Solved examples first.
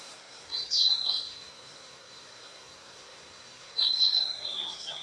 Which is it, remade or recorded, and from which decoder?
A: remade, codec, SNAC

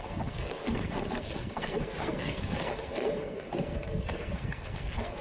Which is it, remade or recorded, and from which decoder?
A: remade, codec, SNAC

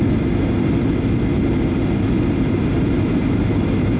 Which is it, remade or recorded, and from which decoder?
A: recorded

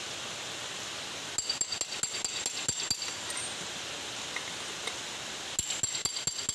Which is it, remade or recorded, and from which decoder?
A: recorded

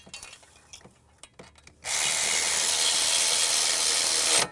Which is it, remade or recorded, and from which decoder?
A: recorded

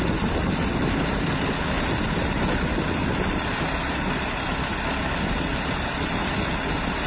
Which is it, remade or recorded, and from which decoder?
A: recorded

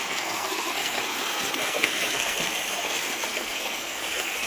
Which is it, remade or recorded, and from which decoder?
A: remade, codec, SNAC